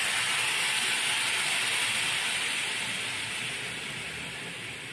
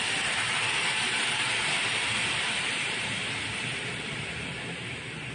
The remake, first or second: second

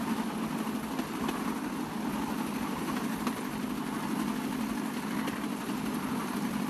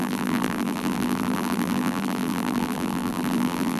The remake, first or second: second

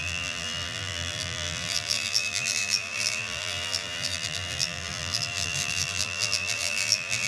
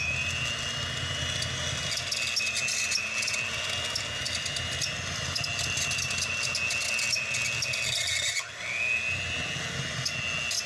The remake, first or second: first